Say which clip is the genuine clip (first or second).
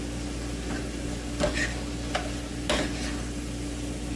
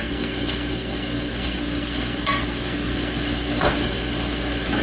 first